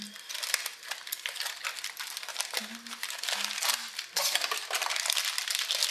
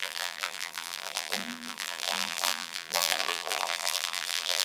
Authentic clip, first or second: first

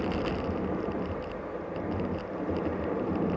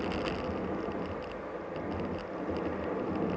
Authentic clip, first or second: second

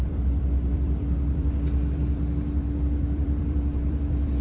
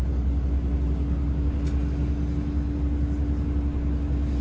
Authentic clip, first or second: second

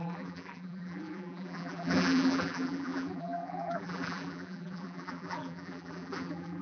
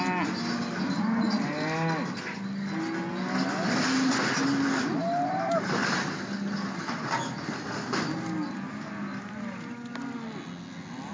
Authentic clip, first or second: second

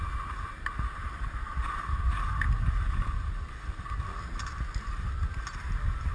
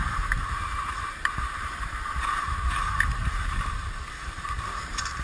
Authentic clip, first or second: first